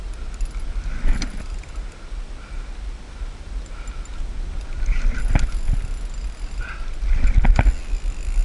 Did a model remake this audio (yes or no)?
no